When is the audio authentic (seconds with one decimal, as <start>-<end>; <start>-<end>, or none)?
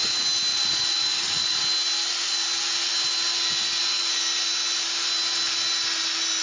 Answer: 0.0-0.5; 1.6-6.4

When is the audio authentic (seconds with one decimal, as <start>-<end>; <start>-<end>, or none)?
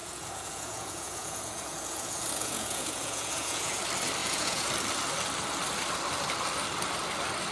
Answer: 3.8-4.2; 4.7-7.5